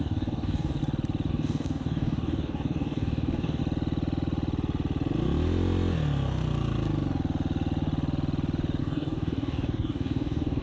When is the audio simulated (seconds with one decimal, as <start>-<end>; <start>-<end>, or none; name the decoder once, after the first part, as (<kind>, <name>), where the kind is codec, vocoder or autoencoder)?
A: 0.0-0.8 (codec, DAC); 1.3-3.6; 8.8-10.6